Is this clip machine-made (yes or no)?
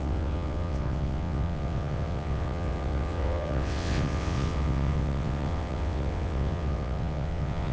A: yes